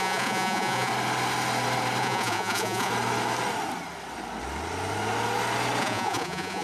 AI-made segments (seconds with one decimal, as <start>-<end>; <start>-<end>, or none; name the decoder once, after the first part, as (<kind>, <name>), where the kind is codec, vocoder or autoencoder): 0.0-0.9 (vocoder, Vocos); 2.0-2.9; 5.8-6.6